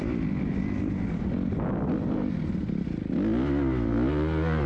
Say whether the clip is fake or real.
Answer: real